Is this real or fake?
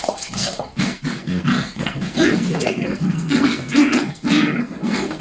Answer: fake